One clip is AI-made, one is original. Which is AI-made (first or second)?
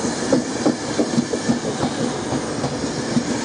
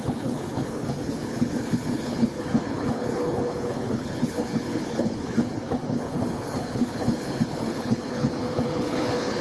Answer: second